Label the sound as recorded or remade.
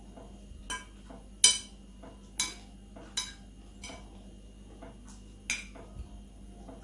recorded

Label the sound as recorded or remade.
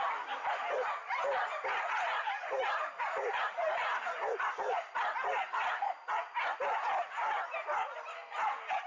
recorded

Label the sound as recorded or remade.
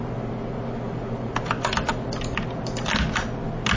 recorded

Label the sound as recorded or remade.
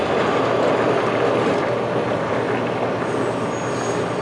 recorded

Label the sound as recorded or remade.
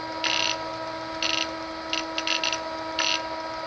recorded